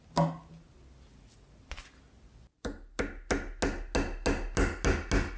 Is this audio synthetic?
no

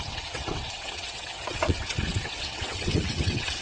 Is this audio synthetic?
yes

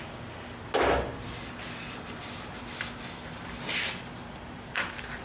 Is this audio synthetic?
no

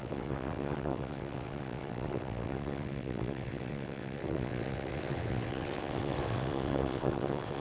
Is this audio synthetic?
yes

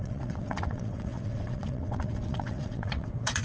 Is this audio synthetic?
yes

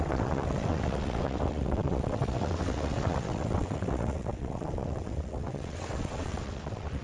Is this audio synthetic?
yes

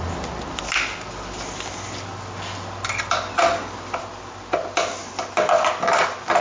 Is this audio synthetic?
no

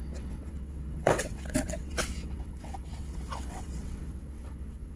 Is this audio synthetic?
yes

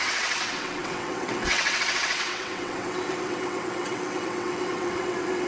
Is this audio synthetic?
yes